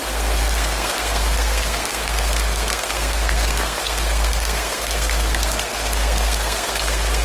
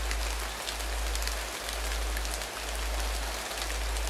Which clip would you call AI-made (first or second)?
first